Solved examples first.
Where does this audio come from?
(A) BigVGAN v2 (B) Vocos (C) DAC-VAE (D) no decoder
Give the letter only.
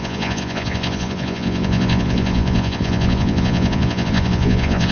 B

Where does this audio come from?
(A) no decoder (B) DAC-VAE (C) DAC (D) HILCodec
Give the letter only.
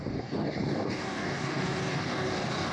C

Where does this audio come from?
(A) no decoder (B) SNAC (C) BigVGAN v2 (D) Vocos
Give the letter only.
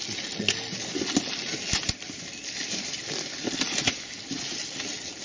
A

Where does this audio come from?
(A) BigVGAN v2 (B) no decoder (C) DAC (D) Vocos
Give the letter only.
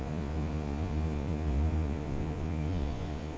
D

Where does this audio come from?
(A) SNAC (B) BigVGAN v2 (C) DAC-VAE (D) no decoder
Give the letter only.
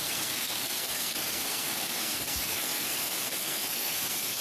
A